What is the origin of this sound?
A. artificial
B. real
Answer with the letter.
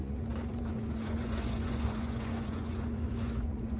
A